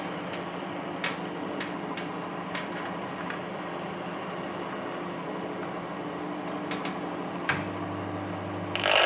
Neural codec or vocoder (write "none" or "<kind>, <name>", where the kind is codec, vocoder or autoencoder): none